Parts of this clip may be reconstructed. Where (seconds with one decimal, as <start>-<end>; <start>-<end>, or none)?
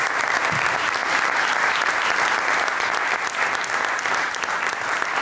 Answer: none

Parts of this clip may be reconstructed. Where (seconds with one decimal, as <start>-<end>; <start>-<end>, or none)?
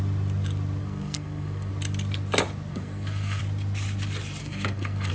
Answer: 0.8-1.7; 2.7-3.4; 4.4-5.1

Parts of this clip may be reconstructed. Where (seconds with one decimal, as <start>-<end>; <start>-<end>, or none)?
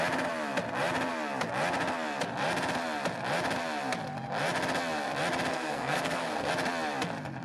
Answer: 5.5-6.5